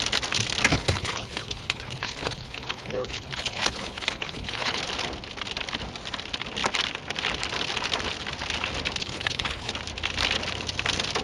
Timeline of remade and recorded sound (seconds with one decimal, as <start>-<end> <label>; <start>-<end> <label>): 0.0-0.7 recorded; 0.7-4.8 remade; 4.8-9.0 recorded; 9.0-9.7 remade; 9.7-11.2 recorded